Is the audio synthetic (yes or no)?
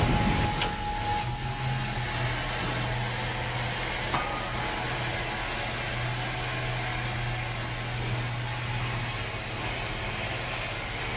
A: no